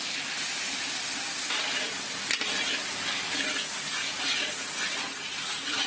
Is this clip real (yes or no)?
yes